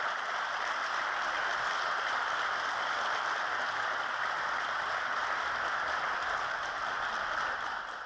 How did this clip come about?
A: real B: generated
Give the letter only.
A